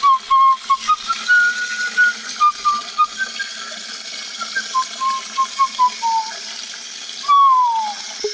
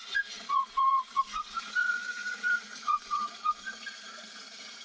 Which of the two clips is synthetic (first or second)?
second